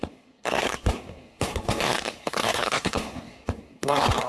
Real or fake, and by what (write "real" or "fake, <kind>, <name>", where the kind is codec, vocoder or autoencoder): fake, codec, SNAC